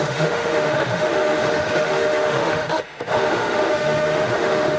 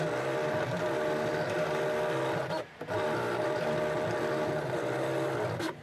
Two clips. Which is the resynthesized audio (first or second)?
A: first